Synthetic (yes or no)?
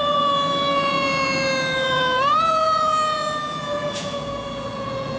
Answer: yes